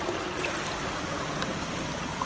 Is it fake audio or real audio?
fake